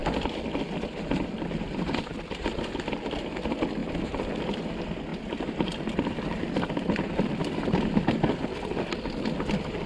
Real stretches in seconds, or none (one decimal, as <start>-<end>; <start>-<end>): 0.0-3.8; 4.4-5.1; 7.6-9.9

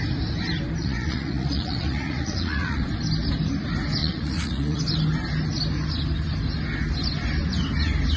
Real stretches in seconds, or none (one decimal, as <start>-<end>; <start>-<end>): 0.0-0.8; 2.8-4.0; 4.8-8.2

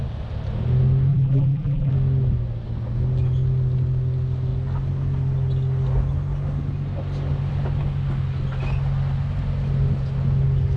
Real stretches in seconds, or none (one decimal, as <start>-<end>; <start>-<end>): 0.0-1.1; 1.9-10.8

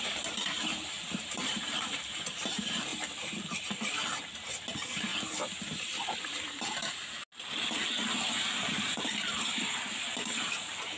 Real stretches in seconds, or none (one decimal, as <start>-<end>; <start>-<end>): 2.9-4.2; 5.1-5.6; 7.0-8.4